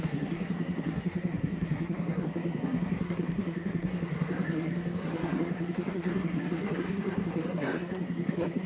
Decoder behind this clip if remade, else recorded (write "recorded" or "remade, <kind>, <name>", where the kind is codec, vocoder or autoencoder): remade, codec, SNAC